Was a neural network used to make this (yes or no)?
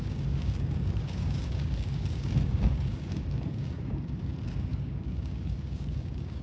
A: yes